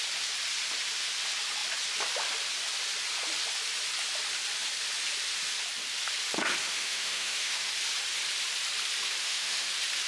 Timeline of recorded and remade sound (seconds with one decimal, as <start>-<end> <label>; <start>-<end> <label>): 0.0-6.6 recorded; 6.6-7.7 remade; 7.7-9.2 recorded; 9.2-9.7 remade; 9.7-10.1 recorded